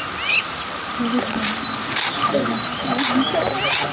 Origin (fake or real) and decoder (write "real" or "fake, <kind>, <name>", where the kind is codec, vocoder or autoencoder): real